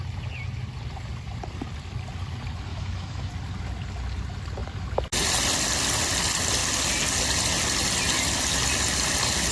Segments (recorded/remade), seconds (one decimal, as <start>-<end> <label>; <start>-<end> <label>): 0.0-2.7 recorded; 2.7-3.3 remade; 3.3-9.5 recorded